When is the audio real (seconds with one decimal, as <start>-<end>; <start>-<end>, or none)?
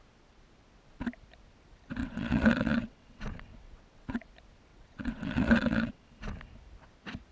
0.0-2.0; 4.3-4.7; 5.9-7.3